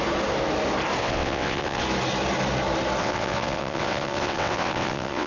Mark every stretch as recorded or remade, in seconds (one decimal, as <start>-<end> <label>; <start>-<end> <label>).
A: 0.0-1.0 recorded; 1.0-1.8 remade; 1.8-3.0 recorded; 3.0-5.3 remade